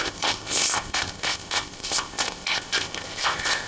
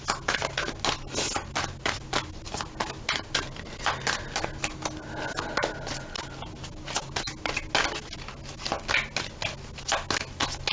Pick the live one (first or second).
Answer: second